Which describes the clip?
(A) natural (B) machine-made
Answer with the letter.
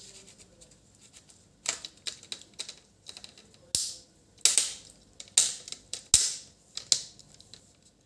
A